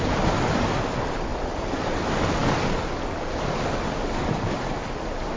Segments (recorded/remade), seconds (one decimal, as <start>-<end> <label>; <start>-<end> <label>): 0.0-5.4 recorded